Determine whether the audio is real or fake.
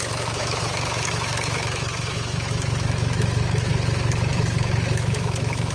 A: fake